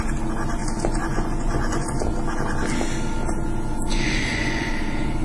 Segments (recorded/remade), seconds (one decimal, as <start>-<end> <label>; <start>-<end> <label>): 0.0-0.6 recorded; 0.6-2.0 remade; 2.0-3.9 recorded; 3.9-4.7 remade; 4.7-5.2 recorded

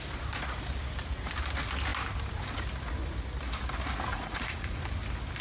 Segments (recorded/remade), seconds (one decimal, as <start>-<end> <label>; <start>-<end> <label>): 0.0-4.1 recorded; 4.1-4.8 remade; 4.8-5.4 recorded

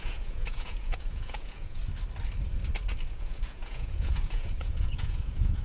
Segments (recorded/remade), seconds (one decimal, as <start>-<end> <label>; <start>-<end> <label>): 0.0-1.8 remade; 1.8-3.1 recorded; 3.1-5.6 remade

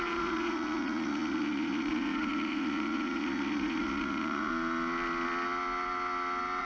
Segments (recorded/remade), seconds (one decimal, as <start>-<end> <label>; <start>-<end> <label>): 0.0-4.5 remade; 4.5-6.6 recorded

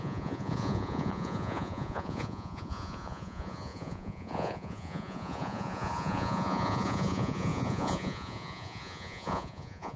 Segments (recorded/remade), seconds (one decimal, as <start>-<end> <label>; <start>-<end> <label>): 0.0-10.0 remade

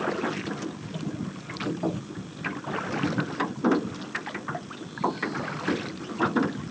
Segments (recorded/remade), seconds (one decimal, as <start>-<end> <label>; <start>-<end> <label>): 0.0-6.7 recorded